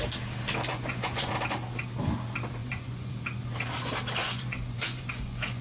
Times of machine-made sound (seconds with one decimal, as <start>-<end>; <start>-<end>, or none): 0.7-1.3; 2.6-3.1; 4.2-5.6